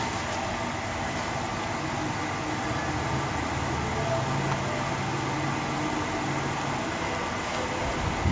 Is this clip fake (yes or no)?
no